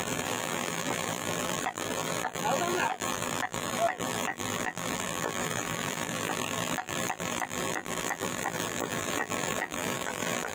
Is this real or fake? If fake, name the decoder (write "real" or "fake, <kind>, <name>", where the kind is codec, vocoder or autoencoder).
fake, vocoder, BigVGAN v2